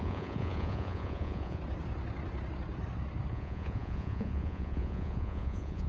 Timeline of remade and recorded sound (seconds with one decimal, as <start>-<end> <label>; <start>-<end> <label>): 0.0-1.6 remade; 1.6-3.3 recorded; 3.3-5.9 remade

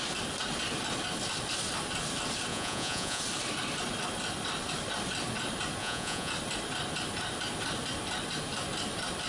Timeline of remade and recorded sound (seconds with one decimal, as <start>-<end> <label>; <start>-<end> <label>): 0.0-2.5 recorded; 2.5-3.2 remade; 3.2-5.8 recorded; 5.8-6.3 remade; 6.3-9.3 recorded